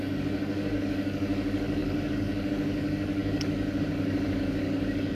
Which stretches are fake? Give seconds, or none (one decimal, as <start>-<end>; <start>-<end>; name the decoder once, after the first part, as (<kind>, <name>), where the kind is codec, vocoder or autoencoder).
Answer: 0.0-5.1 (codec, DAC)